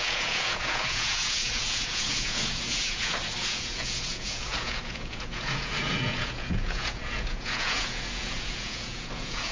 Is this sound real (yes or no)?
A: no